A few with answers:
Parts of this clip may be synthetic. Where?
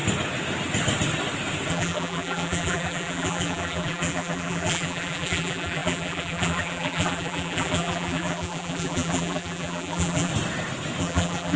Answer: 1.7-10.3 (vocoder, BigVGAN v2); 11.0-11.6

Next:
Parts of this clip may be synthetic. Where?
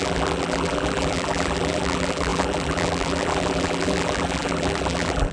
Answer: 0.0-5.3 (vocoder, BigVGAN v2)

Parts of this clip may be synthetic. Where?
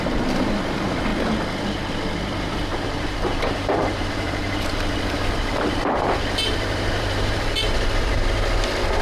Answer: 2.7-7.8 (vocoder, BigVGAN v2)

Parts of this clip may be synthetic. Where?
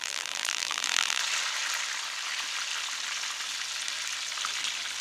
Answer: 0.0-1.2 (vocoder, BigVGAN v2)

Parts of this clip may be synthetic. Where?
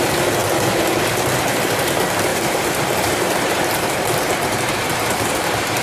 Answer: 2.3-5.8 (vocoder, BigVGAN v2)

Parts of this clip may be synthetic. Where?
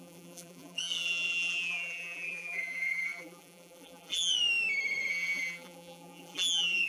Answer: 0.0-4.3 (vocoder, BigVGAN v2); 5.1-6.9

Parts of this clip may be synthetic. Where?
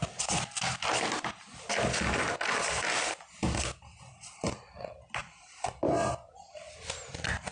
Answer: 5.2-5.9 (vocoder, BigVGAN v2)